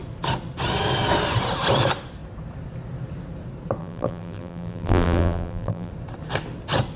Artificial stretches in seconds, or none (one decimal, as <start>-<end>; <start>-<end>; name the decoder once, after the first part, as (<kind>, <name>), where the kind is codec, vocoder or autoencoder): 3.8-5.9 (vocoder, BigVGAN v2)